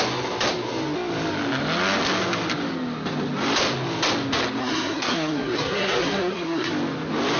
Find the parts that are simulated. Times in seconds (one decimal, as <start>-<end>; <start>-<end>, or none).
4.6-6.7